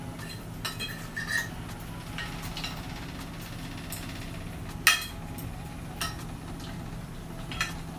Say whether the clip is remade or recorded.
recorded